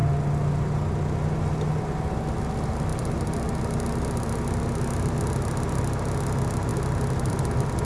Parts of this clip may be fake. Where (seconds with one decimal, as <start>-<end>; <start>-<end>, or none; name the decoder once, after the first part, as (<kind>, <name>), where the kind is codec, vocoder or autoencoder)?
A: none